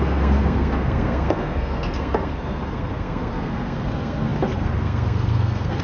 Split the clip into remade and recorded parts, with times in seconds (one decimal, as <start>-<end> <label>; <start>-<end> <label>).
0.0-5.8 remade